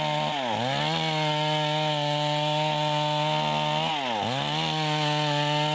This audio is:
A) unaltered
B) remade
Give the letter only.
A